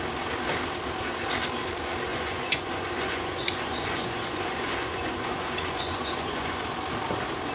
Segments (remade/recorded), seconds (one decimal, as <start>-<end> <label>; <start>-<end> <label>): 0.0-2.1 recorded; 2.1-6.6 remade; 6.6-7.5 recorded